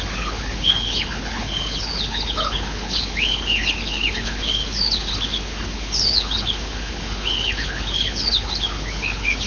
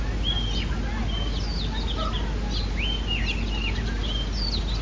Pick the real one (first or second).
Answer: second